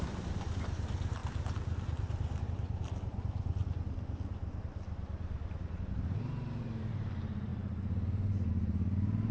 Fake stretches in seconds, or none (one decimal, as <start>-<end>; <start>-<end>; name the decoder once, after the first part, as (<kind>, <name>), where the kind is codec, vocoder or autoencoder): 0.0-3.6 (vocoder, BigVGAN v2); 4.3-9.3